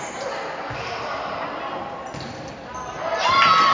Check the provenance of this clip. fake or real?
real